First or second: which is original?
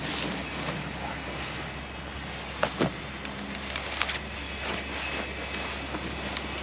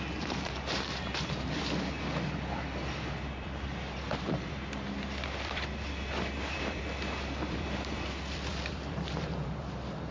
first